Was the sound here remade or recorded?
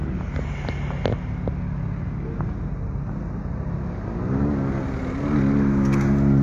recorded